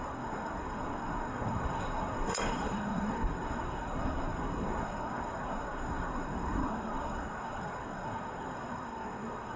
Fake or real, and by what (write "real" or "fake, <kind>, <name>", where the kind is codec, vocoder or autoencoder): fake, codec, SNAC